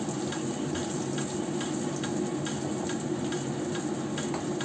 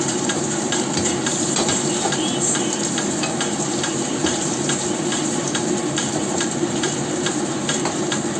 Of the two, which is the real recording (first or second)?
first